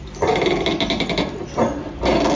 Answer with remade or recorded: recorded